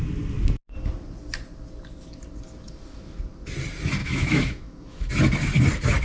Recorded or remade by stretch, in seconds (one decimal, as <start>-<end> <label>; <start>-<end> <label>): 0.0-4.0 recorded; 4.0-5.1 remade; 5.1-6.0 recorded